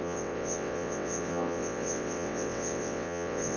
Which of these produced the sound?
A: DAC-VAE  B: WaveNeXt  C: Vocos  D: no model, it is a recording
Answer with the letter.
B